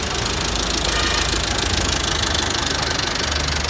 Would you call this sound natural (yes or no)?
yes